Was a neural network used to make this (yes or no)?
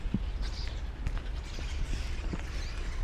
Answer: no